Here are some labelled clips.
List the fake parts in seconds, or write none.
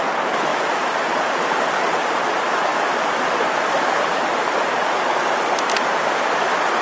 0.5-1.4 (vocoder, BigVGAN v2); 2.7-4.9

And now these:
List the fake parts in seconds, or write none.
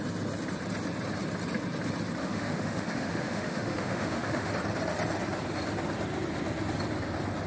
2.2-4.5 (autoencoder, DAC-VAE)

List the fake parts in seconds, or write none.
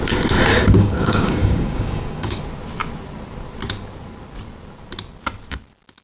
0.5-2.4 (codec, DAC)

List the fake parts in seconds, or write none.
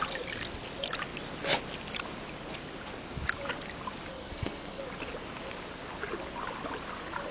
4.1-4.8 (codec, SNAC)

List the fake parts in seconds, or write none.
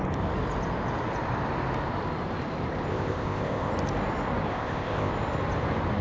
2.9-3.7 (codec, ZipCodec); 4.5-5.1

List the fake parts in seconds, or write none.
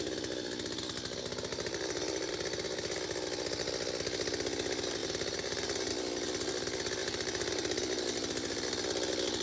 1.5-2.3 (vocoder, BigVGAN v2); 5.0-5.9; 7.0-7.8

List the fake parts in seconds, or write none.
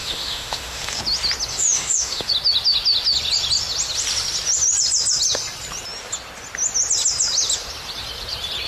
0.0-1.0 (autoencoder, DAC-VAE); 1.5-2.3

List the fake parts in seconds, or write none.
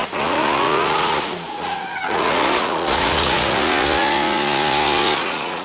0.0-5.6 (vocoder, Vocos)